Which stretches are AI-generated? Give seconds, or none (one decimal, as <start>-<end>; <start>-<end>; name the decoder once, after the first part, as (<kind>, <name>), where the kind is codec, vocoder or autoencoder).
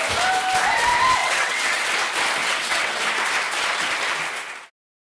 1.2-1.8 (vocoder, WaveNeXt); 2.4-3.0